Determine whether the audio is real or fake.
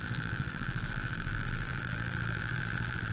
fake